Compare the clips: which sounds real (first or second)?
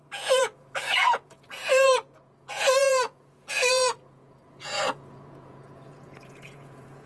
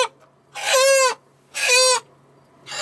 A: second